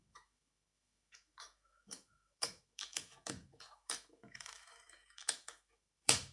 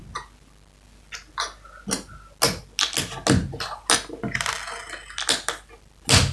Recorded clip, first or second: second